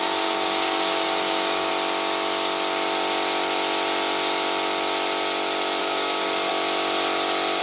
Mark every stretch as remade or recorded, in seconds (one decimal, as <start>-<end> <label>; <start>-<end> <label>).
0.0-1.7 remade; 1.7-5.8 recorded; 5.8-6.5 remade; 6.5-7.6 recorded

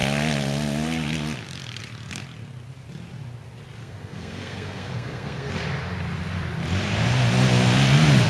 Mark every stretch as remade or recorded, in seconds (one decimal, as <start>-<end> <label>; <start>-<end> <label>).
0.0-3.8 recorded; 3.8-5.5 remade; 5.5-8.3 recorded

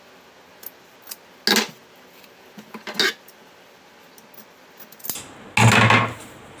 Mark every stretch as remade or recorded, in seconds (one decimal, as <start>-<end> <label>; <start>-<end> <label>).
0.0-6.6 recorded